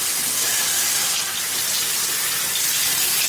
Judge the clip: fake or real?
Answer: fake